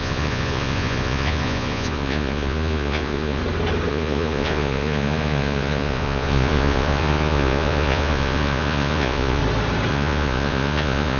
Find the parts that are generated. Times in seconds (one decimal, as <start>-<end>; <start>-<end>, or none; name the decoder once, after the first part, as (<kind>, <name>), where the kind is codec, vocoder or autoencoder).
0.0-3.4 (vocoder, Vocos); 3.9-9.4; 9.9-11.2